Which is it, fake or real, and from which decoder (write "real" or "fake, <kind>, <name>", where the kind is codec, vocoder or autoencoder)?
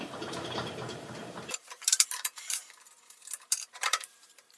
fake, vocoder, BigVGAN v2